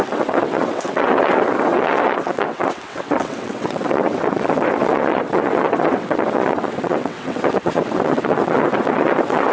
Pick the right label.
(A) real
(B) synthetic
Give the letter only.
B